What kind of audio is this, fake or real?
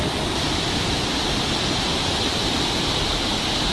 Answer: real